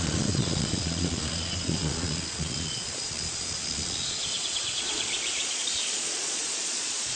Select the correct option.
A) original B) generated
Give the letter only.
B